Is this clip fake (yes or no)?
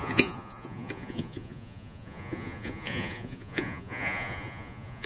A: yes